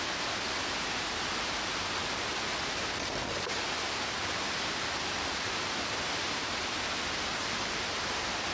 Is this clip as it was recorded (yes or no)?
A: yes